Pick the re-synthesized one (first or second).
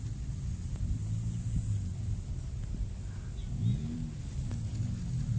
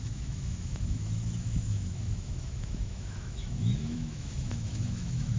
second